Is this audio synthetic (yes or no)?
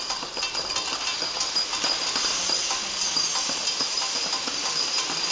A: no